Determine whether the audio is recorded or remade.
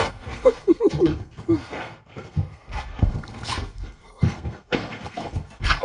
remade